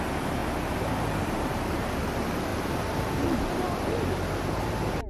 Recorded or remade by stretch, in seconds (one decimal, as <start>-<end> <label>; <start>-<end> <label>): 0.0-0.4 recorded; 0.4-1.5 remade; 1.5-2.5 recorded; 2.5-3.5 remade; 3.5-5.1 recorded